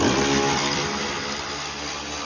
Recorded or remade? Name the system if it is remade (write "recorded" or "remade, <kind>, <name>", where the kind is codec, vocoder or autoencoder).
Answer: recorded